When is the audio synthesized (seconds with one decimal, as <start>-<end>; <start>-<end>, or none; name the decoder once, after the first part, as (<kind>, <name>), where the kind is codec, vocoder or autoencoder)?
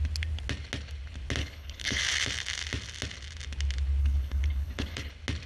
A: 1.4-2.0 (codec, HILCodec); 4.0-5.1